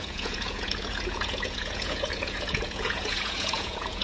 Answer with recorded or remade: remade